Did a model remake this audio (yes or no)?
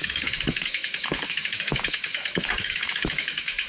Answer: yes